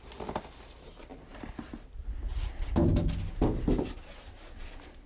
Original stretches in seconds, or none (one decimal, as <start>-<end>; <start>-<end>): 0.0-5.1